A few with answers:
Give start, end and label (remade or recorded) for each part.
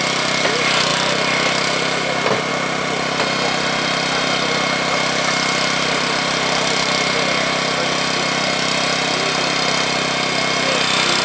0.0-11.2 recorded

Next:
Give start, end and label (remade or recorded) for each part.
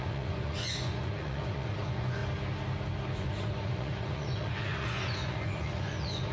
0.0-2.2 remade; 2.2-3.2 recorded; 3.2-6.3 remade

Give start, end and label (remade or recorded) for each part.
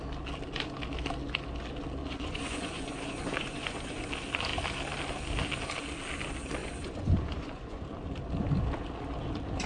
0.0-2.0 recorded; 2.0-4.1 remade; 4.1-6.6 recorded; 6.6-7.8 remade; 7.8-9.7 recorded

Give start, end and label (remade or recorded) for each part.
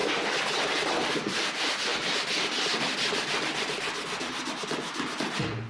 0.0-5.7 recorded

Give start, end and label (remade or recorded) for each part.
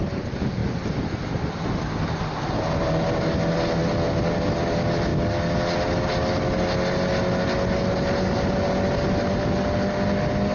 0.0-10.5 recorded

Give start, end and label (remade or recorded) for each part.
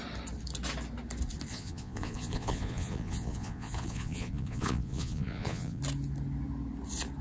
0.0-1.5 recorded; 1.5-5.8 remade; 5.8-7.2 recorded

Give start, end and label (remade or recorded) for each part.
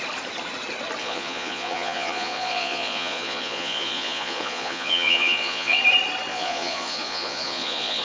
0.0-1.0 recorded; 1.0-5.8 remade; 5.8-6.3 recorded; 6.3-8.0 remade